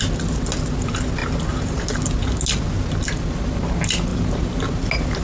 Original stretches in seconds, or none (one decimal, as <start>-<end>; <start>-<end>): 0.0-5.2

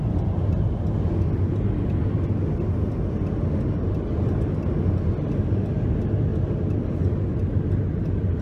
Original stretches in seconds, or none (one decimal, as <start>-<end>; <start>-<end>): 0.0-8.4

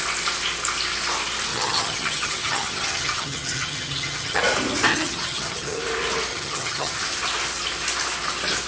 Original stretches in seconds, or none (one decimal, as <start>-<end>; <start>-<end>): 0.0-1.5; 4.4-4.9; 5.8-6.3; 7.0-8.7

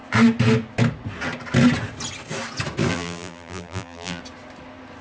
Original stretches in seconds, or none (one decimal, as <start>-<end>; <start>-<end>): 0.0-2.9; 4.2-5.0

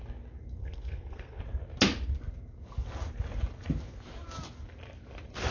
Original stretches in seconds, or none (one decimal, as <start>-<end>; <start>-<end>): 0.0-0.6; 1.4-5.5